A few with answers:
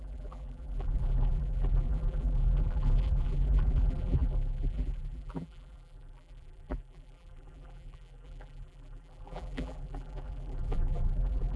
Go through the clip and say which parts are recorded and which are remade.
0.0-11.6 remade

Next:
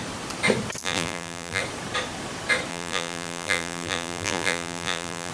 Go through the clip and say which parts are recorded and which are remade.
0.0-0.8 recorded; 0.8-1.6 remade; 1.6-2.7 recorded; 2.7-5.3 remade